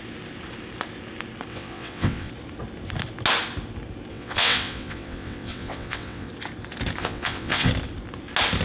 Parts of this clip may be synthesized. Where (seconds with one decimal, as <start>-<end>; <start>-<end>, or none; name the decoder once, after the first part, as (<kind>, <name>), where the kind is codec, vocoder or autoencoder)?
1.5-2.3 (vocoder, WaveNeXt); 4.1-6.3; 7.0-7.7